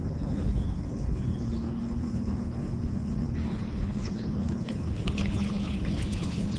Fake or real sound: fake